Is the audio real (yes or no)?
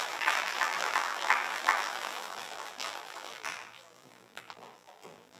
no